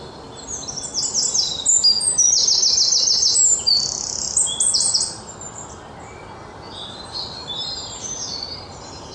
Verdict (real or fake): real